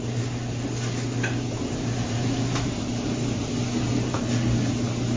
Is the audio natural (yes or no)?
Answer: yes